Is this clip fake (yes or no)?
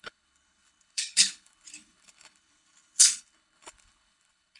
yes